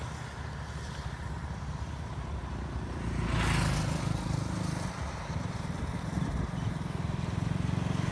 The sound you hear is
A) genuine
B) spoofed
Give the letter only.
A